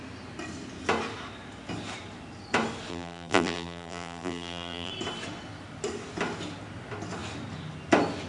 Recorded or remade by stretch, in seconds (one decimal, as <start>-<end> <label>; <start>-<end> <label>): 0.0-2.9 recorded; 2.9-4.9 remade; 4.9-8.3 recorded